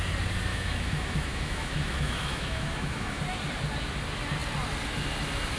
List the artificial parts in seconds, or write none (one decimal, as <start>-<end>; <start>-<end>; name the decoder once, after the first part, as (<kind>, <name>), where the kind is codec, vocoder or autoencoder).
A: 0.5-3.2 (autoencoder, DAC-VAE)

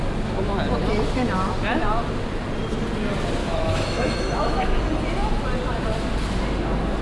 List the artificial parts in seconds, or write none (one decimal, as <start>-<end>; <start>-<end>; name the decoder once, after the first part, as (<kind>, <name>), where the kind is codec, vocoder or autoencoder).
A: 3.4-4.8 (autoencoder, DAC-VAE)

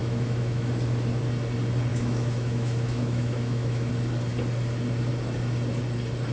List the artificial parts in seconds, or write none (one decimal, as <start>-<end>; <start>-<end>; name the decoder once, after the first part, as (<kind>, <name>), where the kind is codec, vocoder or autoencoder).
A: 0.0-0.7 (autoencoder, DAC-VAE); 1.9-3.9

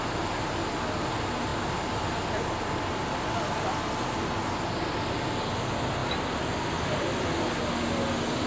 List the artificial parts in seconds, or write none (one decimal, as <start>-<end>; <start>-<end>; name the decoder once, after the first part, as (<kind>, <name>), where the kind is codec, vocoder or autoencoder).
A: none